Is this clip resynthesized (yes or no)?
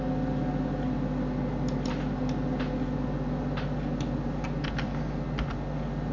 no